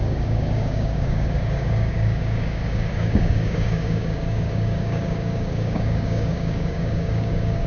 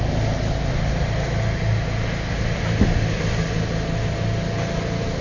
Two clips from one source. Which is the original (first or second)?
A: second